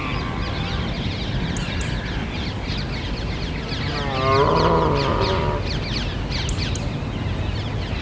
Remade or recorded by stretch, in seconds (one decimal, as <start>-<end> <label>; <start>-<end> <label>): 0.0-8.0 recorded